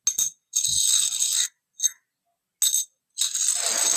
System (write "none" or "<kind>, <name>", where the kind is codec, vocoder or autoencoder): none